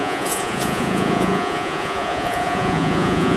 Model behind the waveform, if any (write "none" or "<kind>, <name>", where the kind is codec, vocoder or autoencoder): vocoder, Vocos